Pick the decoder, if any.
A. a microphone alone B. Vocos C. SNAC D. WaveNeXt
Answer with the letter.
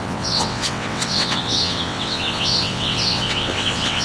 D